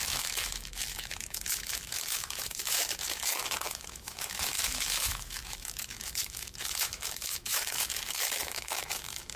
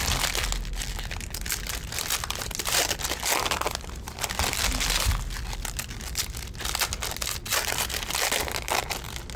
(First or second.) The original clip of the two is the second